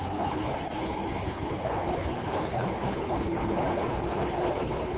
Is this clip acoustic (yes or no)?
no